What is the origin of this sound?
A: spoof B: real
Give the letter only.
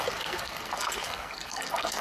A